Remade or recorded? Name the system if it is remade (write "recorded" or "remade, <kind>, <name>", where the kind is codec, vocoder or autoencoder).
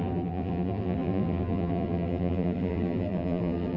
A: remade, vocoder, BigVGAN v2